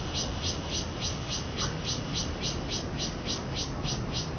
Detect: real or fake real